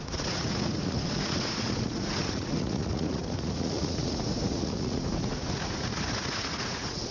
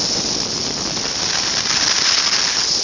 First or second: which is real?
second